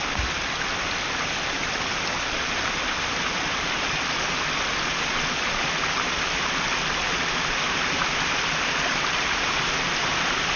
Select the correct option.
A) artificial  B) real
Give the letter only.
B